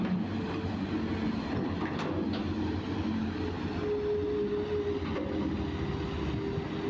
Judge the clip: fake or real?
real